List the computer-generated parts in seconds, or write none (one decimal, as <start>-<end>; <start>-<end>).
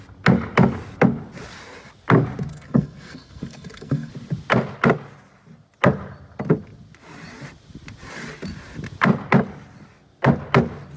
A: 2.5-4.1